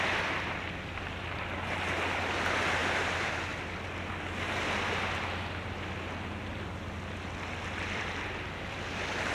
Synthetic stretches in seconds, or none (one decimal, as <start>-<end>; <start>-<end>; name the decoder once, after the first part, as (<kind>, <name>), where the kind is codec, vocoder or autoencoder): none